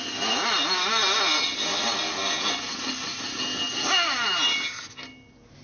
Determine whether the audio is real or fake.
real